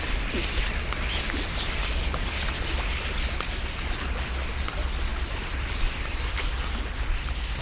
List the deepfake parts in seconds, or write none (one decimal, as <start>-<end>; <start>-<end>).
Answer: none